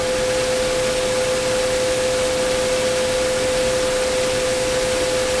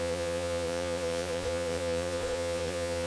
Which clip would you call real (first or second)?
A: first